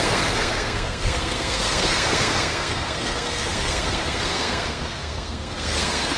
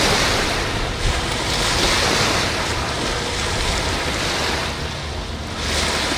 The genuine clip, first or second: second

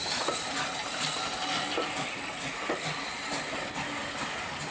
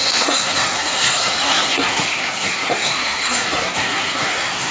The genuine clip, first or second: first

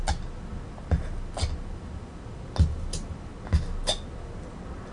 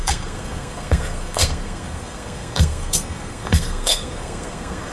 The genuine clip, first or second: first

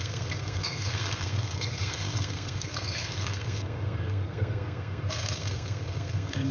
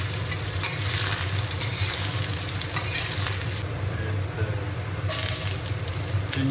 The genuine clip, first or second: second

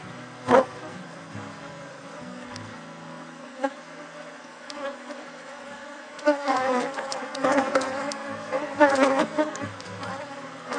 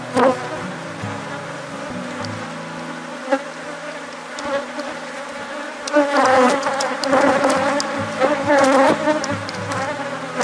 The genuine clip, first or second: second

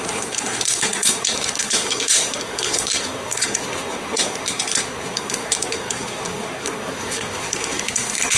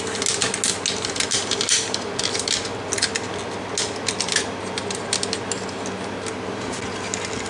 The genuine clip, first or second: second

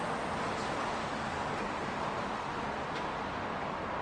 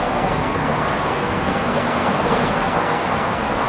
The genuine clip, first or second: first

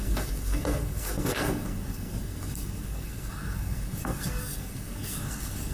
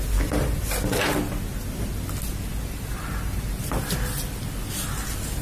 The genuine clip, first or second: second